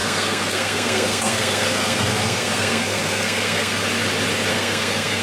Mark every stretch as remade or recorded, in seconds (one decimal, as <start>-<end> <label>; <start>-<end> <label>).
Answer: 0.0-3.8 remade; 3.8-4.5 recorded; 4.5-5.2 remade